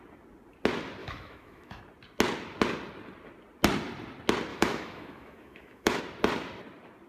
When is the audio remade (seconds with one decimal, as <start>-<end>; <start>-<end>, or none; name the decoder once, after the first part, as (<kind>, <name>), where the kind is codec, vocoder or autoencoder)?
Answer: 1.0-1.8 (autoencoder, DAC-VAE); 4.5-6.0